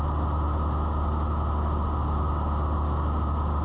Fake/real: real